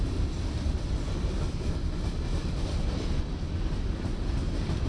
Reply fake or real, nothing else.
real